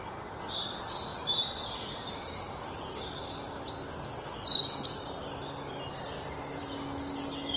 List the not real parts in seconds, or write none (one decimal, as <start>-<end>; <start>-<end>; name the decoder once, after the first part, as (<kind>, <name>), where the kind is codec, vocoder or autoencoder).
none